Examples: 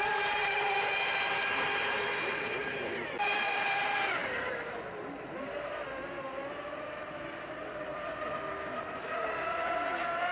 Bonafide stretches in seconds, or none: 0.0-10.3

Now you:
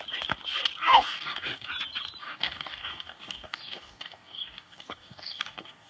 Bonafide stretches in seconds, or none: 0.0-0.8; 1.7-2.2